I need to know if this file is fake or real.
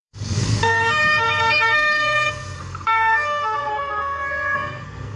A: fake